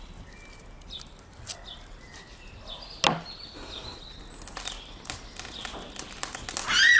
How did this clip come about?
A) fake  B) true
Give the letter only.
B